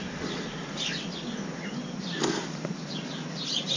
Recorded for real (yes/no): yes